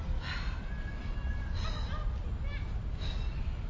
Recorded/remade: recorded